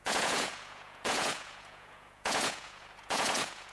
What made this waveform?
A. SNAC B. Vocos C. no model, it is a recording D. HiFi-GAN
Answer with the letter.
B